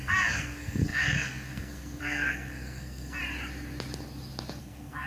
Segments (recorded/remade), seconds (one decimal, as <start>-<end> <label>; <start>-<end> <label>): 0.0-3.2 remade; 3.2-4.6 recorded; 4.6-5.1 remade